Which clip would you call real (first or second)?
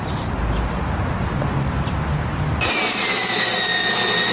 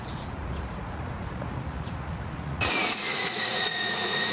first